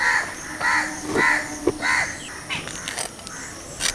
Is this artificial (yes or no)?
yes